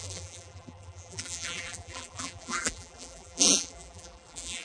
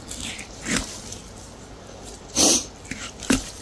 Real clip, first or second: second